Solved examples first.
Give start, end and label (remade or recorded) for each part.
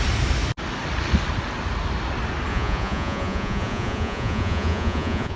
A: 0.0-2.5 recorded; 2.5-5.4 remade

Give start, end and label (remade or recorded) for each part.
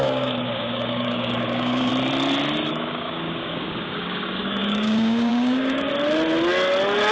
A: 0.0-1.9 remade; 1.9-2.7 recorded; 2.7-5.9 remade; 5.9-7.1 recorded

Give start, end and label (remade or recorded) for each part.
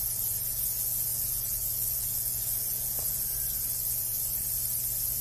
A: 0.0-1.1 recorded; 1.1-3.2 remade; 3.2-5.2 recorded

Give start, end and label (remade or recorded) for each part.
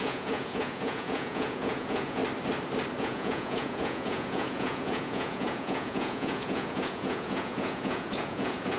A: 0.0-2.2 remade; 2.2-3.0 recorded; 3.0-8.8 remade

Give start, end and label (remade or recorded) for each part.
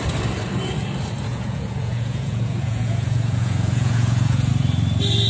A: 0.0-1.3 recorded; 1.3-4.5 remade; 4.5-5.3 recorded